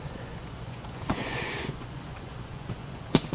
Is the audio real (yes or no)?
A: no